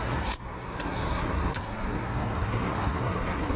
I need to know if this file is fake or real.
fake